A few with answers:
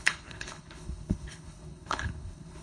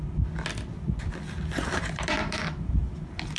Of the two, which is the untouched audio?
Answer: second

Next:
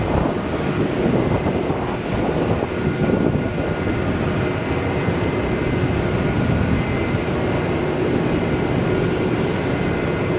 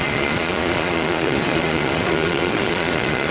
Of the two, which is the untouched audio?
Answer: first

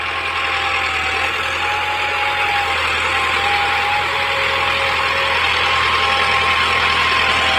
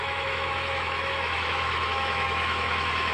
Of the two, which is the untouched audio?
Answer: first